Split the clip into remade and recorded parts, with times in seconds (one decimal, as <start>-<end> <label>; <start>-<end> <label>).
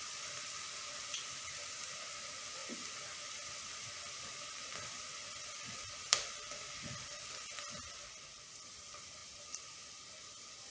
0.0-10.7 remade